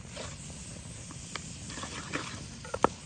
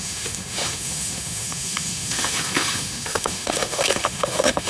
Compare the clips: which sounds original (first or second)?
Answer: first